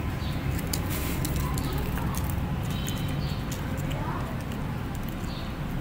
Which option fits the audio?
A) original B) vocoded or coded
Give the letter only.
A